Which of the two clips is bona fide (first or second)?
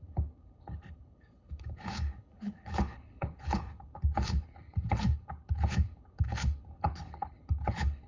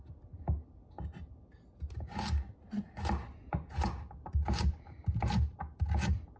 second